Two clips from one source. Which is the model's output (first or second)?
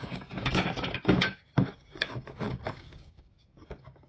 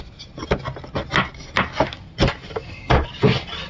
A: first